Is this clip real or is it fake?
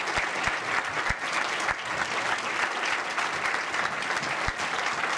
real